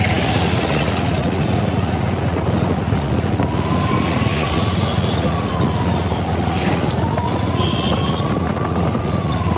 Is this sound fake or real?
fake